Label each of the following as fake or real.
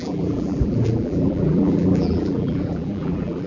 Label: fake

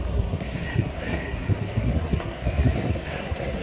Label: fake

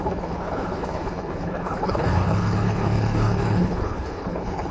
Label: fake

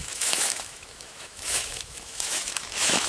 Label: fake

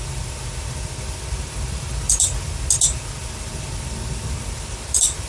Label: real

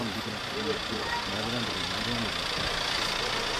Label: real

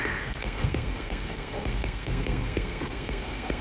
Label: fake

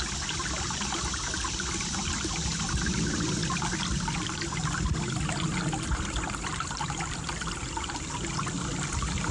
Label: real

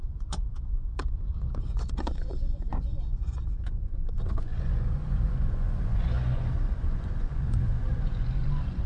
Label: fake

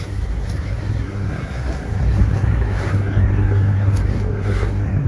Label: fake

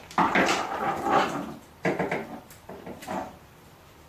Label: fake